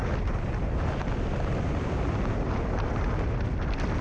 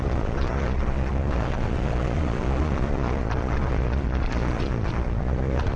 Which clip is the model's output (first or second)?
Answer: second